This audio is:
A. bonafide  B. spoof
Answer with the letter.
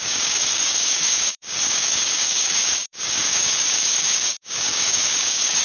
B